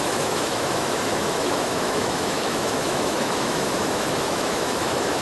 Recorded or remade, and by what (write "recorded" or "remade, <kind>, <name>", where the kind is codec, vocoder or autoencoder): remade, autoencoder, DAC-VAE